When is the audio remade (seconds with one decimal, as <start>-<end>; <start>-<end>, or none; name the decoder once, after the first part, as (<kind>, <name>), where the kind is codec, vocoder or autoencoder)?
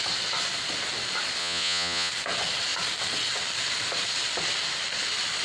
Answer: 1.4-2.1 (vocoder, Vocos)